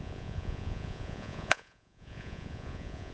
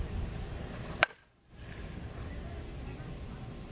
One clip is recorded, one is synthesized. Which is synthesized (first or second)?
first